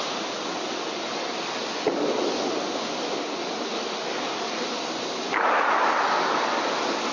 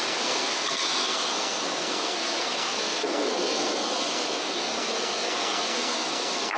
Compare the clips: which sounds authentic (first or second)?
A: first